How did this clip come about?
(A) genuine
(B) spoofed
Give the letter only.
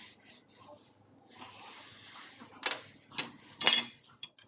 A